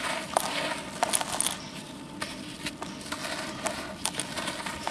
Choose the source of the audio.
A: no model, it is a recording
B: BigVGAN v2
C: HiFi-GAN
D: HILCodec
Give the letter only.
A